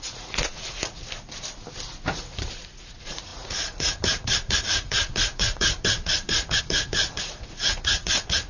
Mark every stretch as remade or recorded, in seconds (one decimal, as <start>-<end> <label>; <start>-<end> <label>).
0.0-1.0 remade; 1.0-2.1 recorded; 2.1-8.5 remade